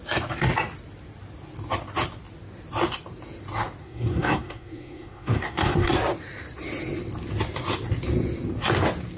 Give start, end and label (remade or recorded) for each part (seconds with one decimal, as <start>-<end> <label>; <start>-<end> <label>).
0.0-3.8 recorded; 3.8-5.9 remade; 5.9-9.2 recorded